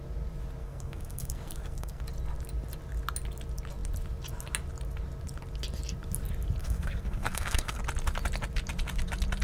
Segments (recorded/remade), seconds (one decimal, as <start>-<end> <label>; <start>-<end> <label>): 0.0-0.6 recorded; 0.6-2.0 remade; 2.0-6.6 recorded; 6.6-7.8 remade; 7.8-9.4 recorded